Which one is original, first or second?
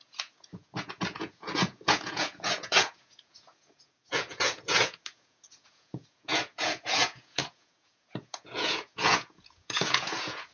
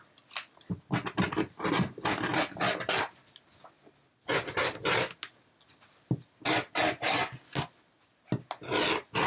second